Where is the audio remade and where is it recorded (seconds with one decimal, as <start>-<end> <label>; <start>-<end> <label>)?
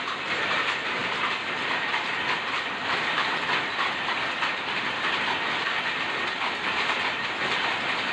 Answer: 0.0-8.1 recorded